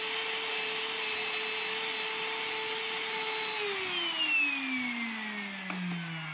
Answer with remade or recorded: recorded